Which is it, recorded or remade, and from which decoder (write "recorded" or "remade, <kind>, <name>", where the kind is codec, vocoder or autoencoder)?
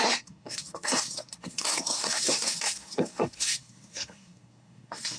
remade, codec, SNAC